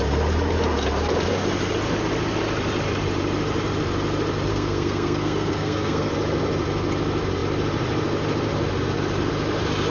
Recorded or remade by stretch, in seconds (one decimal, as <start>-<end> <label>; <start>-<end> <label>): 0.0-4.5 recorded; 4.5-6.1 remade; 6.1-9.9 recorded